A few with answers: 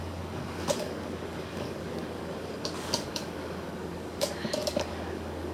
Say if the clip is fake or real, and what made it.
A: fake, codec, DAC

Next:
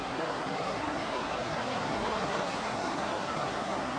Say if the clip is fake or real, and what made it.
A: fake, codec, SNAC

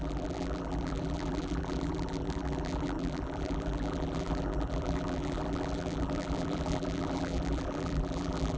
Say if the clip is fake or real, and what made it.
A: fake, vocoder, BigVGAN v2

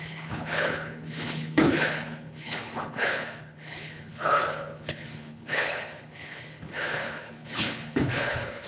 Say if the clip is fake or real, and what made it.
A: fake, codec, HILCodec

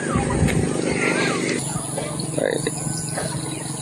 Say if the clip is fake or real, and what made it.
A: real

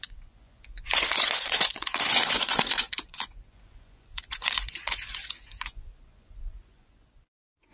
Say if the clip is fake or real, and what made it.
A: fake, vocoder, Vocos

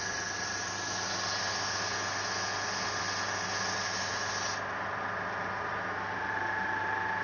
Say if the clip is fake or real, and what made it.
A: real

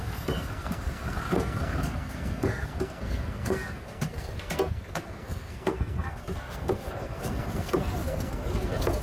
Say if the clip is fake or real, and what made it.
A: fake, codec, SNAC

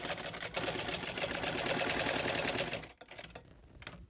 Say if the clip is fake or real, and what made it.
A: real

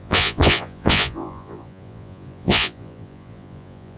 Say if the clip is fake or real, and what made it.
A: fake, vocoder, Vocos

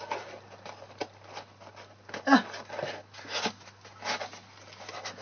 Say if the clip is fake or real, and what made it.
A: real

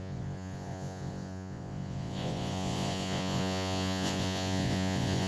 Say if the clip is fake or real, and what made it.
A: fake, vocoder, Vocos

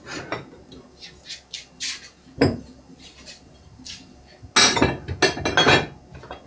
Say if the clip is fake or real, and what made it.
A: real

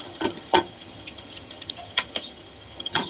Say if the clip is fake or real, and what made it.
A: fake, vocoder, HiFi-GAN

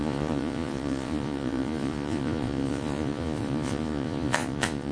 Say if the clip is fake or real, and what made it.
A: fake, vocoder, Vocos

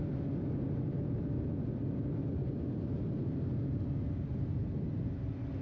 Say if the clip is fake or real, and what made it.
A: real